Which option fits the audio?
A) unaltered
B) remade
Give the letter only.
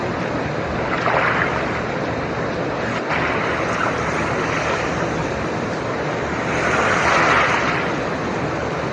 A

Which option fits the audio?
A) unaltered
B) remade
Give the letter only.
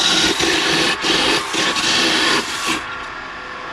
A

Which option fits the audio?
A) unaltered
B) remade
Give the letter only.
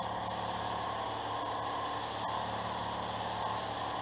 A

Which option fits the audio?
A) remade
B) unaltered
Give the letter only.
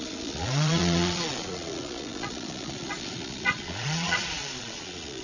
A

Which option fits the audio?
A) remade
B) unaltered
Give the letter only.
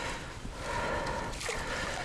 B